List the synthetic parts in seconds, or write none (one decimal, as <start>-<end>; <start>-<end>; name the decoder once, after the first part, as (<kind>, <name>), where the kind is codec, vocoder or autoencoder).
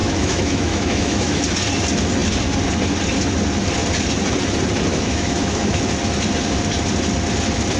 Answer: 0.0-1.4 (autoencoder, DAC-VAE); 4.9-5.8